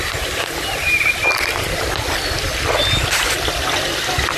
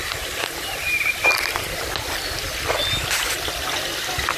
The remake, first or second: second